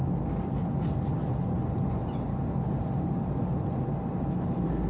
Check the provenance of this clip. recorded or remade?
recorded